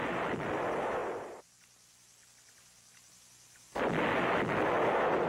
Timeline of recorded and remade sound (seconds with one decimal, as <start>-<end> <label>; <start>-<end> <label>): 0.0-5.3 recorded